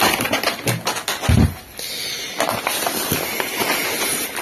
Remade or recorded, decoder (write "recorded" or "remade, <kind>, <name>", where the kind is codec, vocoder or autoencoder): recorded